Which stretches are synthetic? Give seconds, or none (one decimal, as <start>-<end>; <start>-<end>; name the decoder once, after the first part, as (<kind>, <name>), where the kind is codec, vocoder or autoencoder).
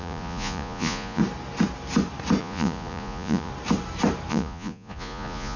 0.0-1.2 (vocoder, Vocos); 2.4-3.5; 4.3-5.6